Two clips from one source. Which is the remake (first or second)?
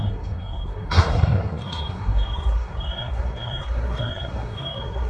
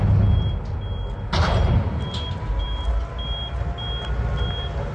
first